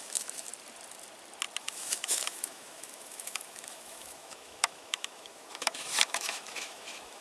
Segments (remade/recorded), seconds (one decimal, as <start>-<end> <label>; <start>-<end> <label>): 0.0-0.5 remade; 0.5-1.6 recorded; 1.6-7.2 remade